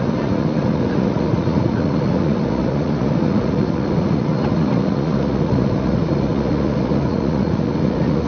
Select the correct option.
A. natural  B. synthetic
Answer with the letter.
B